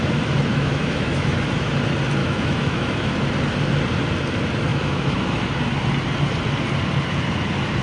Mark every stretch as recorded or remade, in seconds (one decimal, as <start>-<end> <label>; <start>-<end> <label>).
0.0-0.5 recorded; 0.5-1.7 remade; 1.7-2.2 recorded; 2.2-3.1 remade; 3.1-4.7 recorded; 4.7-5.5 remade; 5.5-7.8 recorded